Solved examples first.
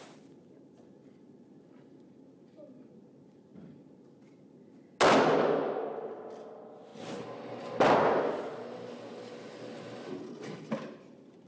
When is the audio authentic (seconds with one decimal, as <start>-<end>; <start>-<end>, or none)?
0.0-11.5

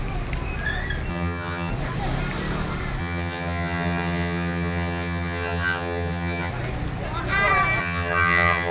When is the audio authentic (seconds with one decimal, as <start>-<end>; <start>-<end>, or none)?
0.0-1.1; 1.7-3.0; 6.5-7.8

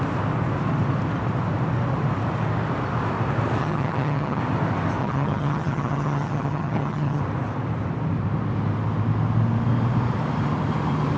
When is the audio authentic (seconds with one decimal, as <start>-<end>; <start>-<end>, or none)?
0.0-3.6; 4.4-5.0; 7.2-11.2